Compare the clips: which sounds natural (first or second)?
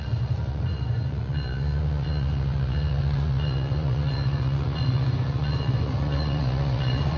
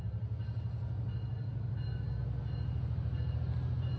second